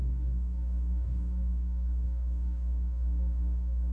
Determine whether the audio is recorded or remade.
remade